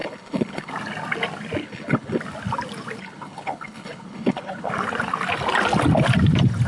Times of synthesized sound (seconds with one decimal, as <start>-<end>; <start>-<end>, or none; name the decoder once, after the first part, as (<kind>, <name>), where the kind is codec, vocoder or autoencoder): 0.0-0.7 (codec, HILCodec); 1.6-2.2; 3.0-4.7